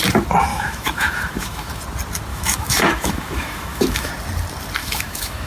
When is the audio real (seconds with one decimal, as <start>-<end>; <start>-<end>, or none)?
0.0-0.5; 1.8-2.3; 4.1-4.8